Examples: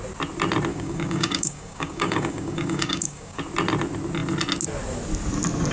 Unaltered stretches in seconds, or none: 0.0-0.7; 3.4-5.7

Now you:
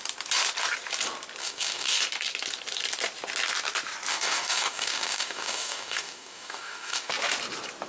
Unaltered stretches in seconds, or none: 0.0-1.4; 2.0-4.1; 7.1-7.9

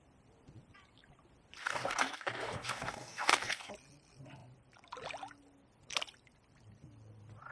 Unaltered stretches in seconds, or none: 0.0-1.6; 3.7-7.5

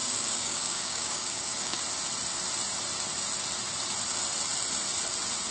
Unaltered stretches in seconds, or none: 1.8-5.5

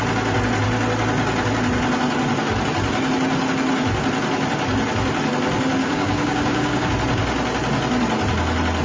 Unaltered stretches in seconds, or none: 0.0-5.8; 6.9-8.8

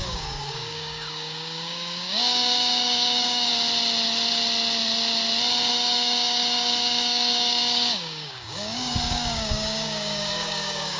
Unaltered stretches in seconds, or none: 3.5-5.7

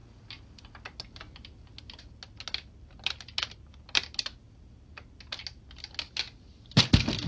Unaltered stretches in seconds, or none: 0.0-7.3